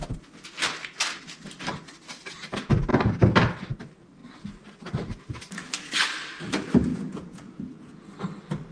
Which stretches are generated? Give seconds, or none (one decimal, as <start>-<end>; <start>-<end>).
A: 6.9-8.2